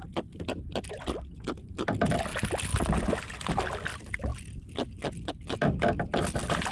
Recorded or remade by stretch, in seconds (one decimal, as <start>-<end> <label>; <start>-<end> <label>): 0.0-4.3 recorded; 4.3-5.3 remade; 5.3-6.7 recorded